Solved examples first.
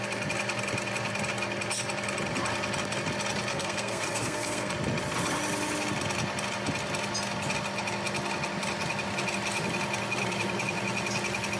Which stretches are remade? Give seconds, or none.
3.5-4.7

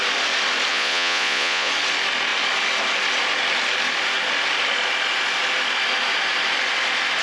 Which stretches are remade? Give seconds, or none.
0.7-1.7